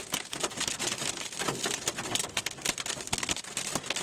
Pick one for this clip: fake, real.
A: real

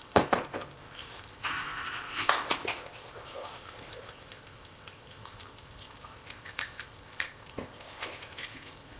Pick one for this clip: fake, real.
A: fake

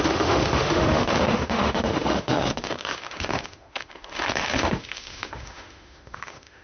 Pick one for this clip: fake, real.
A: fake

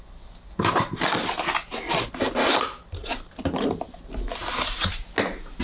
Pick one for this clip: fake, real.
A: real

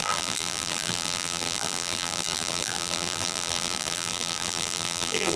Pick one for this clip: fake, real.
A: fake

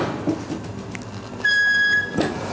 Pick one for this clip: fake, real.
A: real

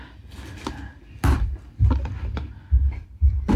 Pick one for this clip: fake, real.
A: real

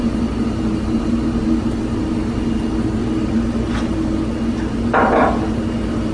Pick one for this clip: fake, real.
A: real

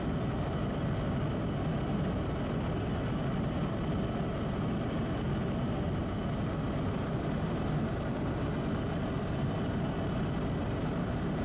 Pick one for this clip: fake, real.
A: real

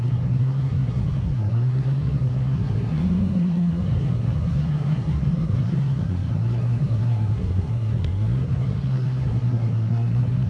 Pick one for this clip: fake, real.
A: fake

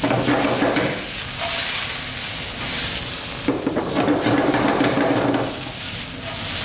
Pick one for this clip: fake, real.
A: real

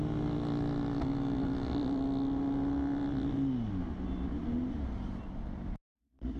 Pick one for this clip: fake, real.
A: real